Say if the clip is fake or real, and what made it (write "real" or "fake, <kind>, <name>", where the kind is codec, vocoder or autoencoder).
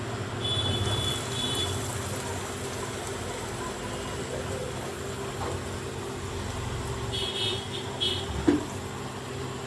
real